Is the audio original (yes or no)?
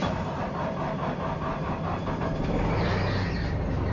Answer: yes